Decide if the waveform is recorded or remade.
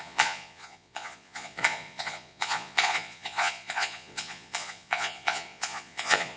remade